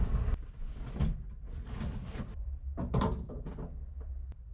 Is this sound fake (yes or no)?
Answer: no